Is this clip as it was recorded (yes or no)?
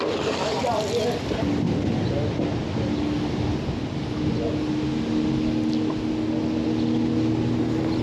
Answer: yes